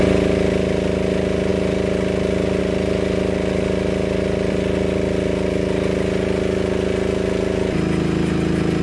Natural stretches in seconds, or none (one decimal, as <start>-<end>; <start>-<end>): 0.0-8.8